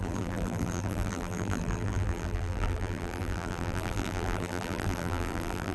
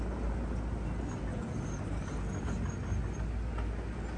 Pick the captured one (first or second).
second